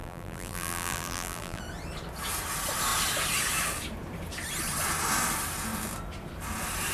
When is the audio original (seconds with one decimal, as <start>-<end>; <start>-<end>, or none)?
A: 1.6-6.9